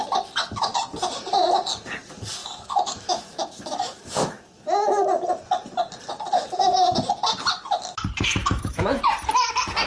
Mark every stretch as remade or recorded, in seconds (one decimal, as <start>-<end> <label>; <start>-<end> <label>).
0.0-2.4 recorded; 2.4-5.0 remade; 5.0-8.4 recorded; 8.4-9.0 remade; 9.0-9.9 recorded